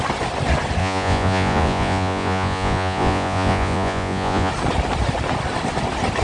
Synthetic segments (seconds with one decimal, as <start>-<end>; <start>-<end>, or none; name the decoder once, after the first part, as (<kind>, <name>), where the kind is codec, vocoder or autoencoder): 0.8-4.5 (vocoder, Vocos)

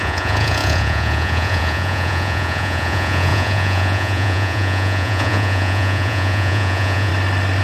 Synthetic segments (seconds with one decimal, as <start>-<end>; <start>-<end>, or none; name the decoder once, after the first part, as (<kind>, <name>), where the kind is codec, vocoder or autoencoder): 0.0-7.1 (vocoder, Vocos)

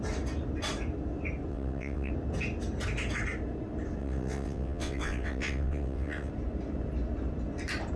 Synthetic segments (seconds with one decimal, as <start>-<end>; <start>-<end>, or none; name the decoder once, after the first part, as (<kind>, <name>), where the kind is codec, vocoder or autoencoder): 1.5-2.1 (vocoder, WaveNeXt); 4.0-6.3

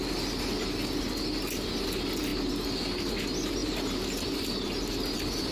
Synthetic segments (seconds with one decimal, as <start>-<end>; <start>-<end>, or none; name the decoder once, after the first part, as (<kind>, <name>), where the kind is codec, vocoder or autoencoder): 3.6-5.5 (vocoder, BigVGAN v2)

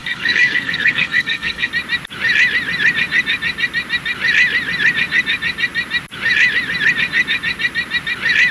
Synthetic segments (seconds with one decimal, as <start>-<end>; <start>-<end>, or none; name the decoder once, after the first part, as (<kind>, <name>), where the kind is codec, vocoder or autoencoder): 0.0-1.7 (codec, SNAC)

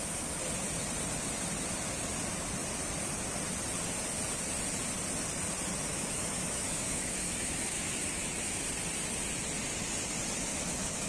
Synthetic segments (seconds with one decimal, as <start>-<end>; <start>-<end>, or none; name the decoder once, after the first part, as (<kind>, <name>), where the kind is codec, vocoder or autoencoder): 5.9-8.6 (autoencoder, DAC-VAE); 10.5-11.1

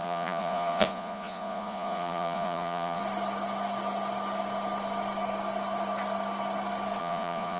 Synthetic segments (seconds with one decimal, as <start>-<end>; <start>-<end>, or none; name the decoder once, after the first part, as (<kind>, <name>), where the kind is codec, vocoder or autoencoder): 0.0-3.0 (vocoder, Vocos); 7.0-7.6

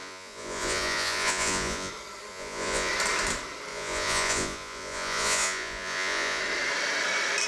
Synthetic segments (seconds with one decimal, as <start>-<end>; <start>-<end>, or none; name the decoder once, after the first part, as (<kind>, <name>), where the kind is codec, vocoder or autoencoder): 0.0-1.9 (vocoder, Vocos); 2.3-2.9; 3.7-6.4